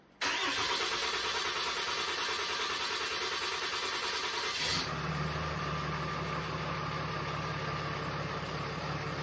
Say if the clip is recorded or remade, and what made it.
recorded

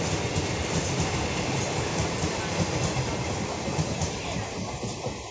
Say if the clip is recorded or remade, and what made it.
remade, vocoder, BigVGAN v2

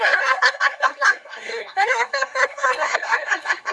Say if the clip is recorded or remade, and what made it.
remade, codec, SNAC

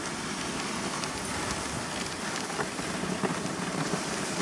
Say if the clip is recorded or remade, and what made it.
recorded